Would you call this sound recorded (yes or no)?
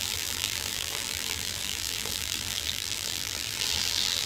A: no